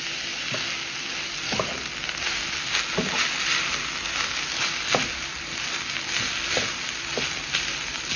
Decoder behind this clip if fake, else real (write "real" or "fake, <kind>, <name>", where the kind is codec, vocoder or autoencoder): real